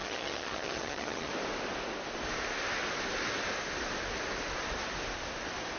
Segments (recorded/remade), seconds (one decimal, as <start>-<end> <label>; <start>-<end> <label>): 0.0-1.3 remade; 1.3-5.8 recorded